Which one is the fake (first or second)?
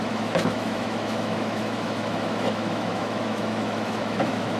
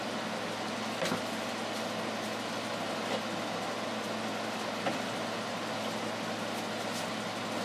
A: first